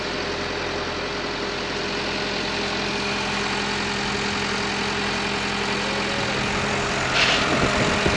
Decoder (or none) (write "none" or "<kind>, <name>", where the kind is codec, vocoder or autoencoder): none